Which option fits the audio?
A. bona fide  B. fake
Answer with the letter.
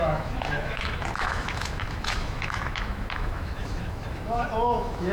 B